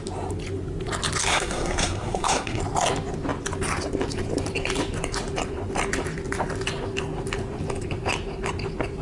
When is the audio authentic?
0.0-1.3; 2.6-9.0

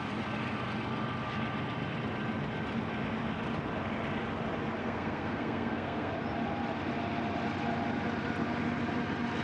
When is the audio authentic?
0.0-4.8; 6.1-9.4

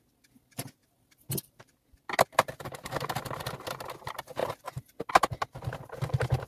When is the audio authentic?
0.0-4.4; 5.1-6.5

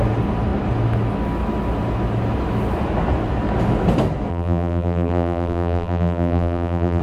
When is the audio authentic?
0.0-4.3